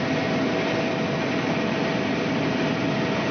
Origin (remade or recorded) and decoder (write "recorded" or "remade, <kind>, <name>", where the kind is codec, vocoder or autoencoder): recorded